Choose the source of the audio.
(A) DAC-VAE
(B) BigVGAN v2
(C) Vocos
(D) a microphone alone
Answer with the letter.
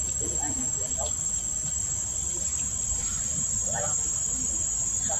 D